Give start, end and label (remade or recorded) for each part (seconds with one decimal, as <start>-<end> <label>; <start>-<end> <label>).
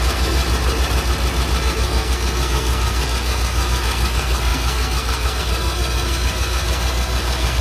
0.0-0.4 remade; 0.4-1.6 recorded; 1.6-7.6 remade